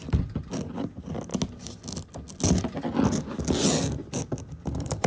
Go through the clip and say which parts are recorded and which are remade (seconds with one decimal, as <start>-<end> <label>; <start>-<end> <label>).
0.0-1.3 remade; 1.3-3.9 recorded; 3.9-5.1 remade